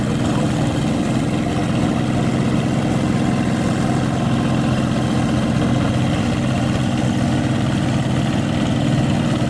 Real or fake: real